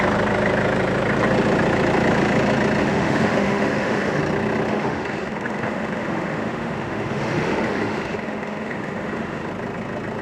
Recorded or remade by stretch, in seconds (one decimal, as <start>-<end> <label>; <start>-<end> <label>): 0.0-2.8 recorded; 2.8-4.2 remade; 4.2-4.7 recorded; 4.7-9.5 remade; 9.5-10.2 recorded